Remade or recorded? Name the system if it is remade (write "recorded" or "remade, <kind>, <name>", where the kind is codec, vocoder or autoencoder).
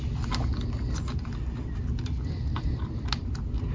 recorded